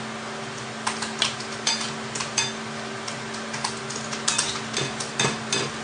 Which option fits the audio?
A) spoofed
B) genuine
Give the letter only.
B